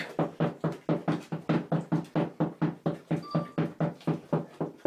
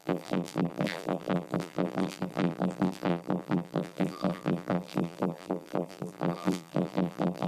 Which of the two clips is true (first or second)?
first